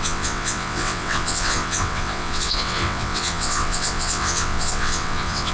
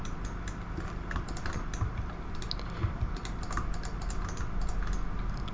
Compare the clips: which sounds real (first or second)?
second